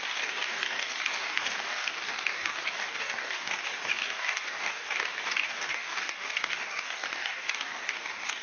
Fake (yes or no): yes